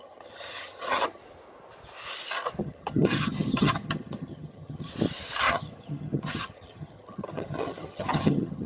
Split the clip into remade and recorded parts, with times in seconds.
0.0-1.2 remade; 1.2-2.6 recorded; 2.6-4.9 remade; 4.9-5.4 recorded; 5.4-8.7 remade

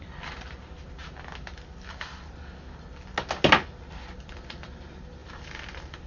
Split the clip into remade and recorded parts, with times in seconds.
0.0-1.0 remade; 1.0-3.5 recorded; 3.5-6.1 remade

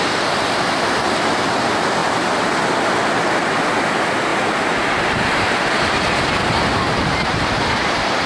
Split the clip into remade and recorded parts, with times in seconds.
0.0-4.3 recorded; 4.3-8.3 remade

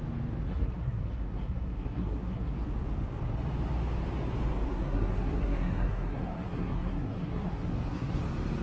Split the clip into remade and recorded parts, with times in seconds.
0.0-0.5 recorded; 0.5-2.5 remade; 2.5-4.7 recorded; 4.7-8.2 remade; 8.2-8.6 recorded

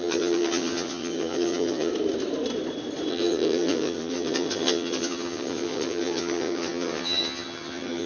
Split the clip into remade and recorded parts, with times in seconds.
0.0-1.9 remade; 1.9-3.1 recorded; 3.1-8.1 remade

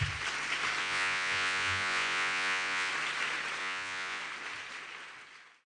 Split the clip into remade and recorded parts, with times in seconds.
0.0-0.8 recorded; 0.8-2.9 remade; 2.9-3.6 recorded; 3.6-4.2 remade; 4.2-5.7 recorded

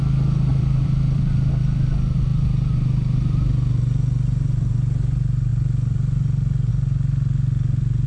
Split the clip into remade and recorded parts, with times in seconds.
0.0-0.5 recorded; 0.5-1.5 remade; 1.5-8.1 recorded